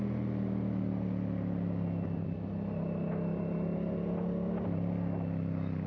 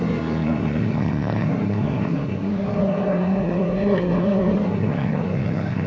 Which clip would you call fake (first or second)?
second